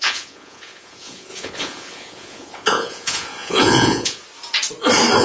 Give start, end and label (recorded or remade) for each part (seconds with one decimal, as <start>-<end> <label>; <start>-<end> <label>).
0.0-4.2 remade; 4.2-5.2 recorded